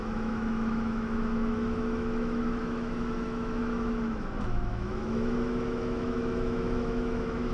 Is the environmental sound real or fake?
fake